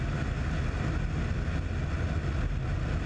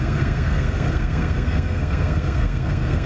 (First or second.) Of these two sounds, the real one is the first